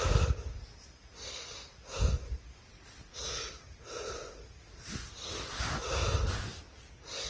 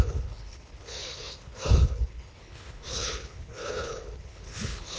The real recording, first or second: first